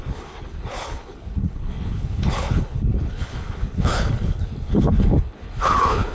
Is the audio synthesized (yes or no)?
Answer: yes